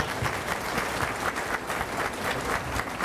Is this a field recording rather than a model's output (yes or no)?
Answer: yes